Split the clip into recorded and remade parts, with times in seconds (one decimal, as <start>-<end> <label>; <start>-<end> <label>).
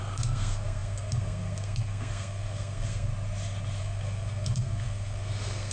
0.0-3.1 remade; 3.1-3.8 recorded; 3.8-5.7 remade